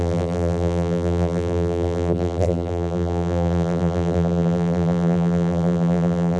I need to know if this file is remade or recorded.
remade